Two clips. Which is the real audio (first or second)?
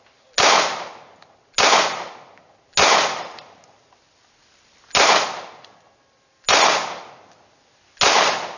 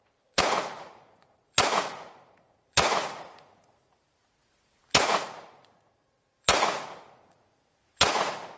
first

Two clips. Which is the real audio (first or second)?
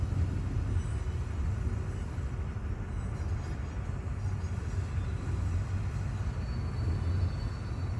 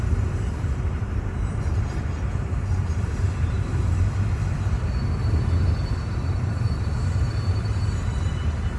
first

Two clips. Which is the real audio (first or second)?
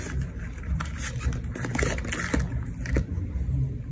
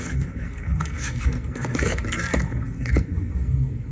first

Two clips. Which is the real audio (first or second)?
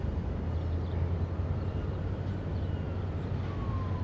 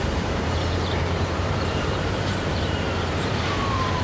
first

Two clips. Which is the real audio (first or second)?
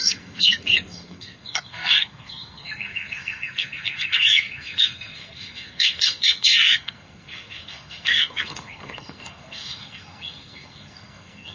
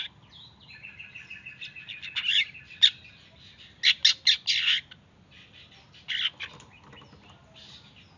second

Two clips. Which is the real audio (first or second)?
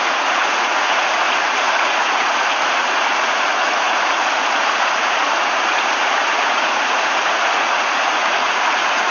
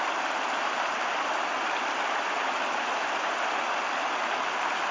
second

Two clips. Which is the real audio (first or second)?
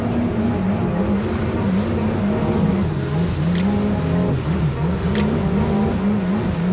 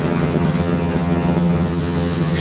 first